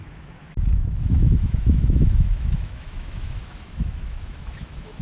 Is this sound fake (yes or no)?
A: yes